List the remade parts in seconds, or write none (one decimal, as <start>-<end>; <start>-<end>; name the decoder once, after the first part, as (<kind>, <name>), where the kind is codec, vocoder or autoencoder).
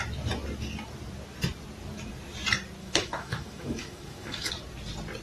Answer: 2.8-4.5 (autoencoder, DAC-VAE)